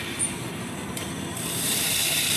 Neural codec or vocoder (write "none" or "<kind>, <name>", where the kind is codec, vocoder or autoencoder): vocoder, BigVGAN v2